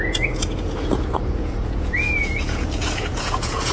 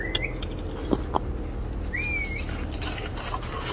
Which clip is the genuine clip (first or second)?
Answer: second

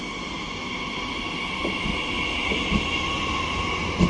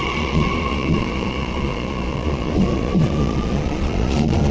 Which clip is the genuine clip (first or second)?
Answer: first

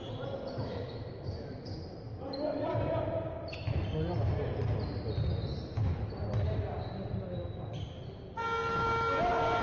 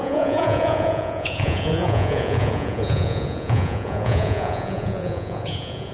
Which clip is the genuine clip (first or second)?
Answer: first